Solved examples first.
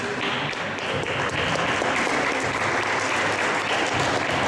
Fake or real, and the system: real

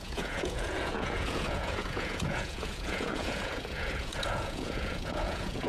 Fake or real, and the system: fake, vocoder, Vocos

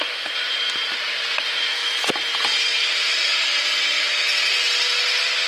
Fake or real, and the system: real